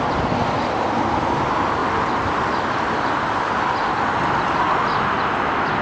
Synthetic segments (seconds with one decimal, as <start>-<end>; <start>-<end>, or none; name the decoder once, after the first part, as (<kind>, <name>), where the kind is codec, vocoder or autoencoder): none